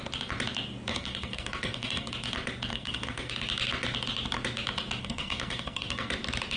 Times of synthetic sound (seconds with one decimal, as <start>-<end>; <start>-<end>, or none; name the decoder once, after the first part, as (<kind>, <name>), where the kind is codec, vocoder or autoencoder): 0.9-2.1 (codec, SNAC); 2.7-3.3; 5.0-6.1